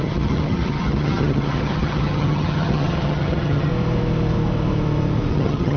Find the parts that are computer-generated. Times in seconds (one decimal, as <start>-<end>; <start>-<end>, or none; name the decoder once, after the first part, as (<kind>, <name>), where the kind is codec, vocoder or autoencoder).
0.0-3.7 (vocoder, HiFi-GAN); 5.3-5.8